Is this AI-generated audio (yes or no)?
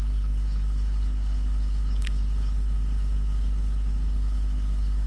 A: yes